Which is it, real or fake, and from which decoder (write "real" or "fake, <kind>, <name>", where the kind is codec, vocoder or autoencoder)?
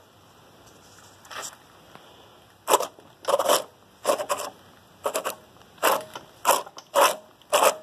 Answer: real